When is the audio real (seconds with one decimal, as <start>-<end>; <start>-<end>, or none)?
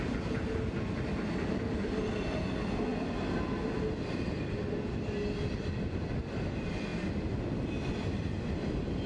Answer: 0.0-9.1